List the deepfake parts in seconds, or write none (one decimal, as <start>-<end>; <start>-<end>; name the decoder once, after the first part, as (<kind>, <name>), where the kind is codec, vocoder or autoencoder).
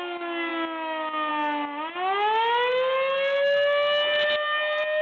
none